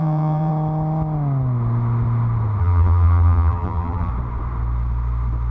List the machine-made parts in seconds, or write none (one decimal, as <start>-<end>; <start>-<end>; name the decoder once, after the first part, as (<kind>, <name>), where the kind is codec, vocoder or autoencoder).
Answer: 0.0-0.5 (vocoder, BigVGAN v2); 2.6-4.1